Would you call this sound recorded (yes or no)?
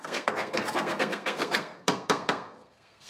no